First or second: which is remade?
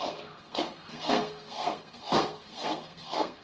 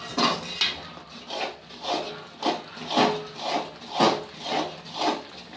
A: first